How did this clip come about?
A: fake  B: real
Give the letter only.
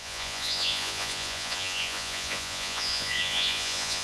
A